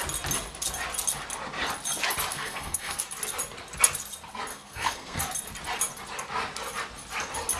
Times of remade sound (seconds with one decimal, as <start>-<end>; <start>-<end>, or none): 2.3-3.0; 4.5-5.2